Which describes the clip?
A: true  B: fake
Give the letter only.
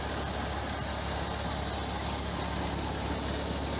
A